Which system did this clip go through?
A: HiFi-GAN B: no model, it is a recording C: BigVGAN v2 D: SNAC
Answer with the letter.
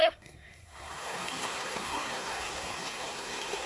D